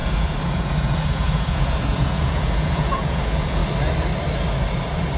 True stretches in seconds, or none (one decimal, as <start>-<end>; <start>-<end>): 3.6-5.2